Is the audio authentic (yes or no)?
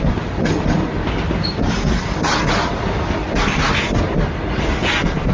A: yes